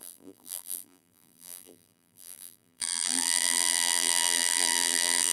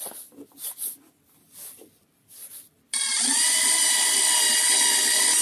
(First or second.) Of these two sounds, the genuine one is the second